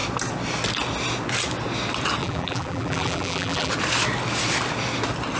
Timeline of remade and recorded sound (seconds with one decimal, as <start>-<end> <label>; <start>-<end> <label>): 0.0-2.2 recorded; 2.2-3.7 remade; 3.7-5.4 recorded